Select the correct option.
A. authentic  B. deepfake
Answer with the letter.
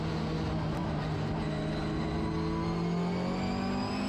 A